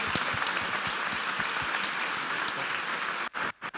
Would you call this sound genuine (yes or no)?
yes